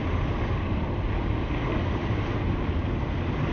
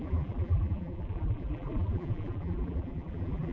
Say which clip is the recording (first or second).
first